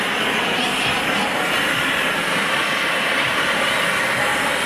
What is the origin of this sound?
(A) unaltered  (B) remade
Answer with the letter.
A